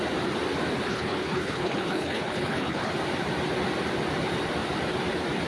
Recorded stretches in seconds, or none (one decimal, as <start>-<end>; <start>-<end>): 0.0-0.9; 2.9-5.5